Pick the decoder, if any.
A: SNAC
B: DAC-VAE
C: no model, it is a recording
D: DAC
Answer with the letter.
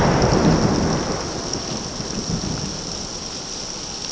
C